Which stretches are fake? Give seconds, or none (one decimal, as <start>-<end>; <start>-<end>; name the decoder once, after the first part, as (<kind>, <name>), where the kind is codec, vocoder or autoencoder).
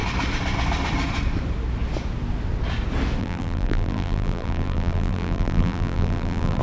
3.2-6.6 (vocoder, BigVGAN v2)